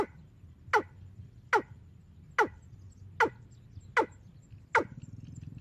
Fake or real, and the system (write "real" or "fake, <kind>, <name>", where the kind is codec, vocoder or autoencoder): real